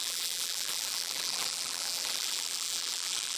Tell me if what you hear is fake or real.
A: fake